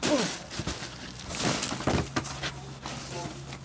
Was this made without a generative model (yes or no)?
yes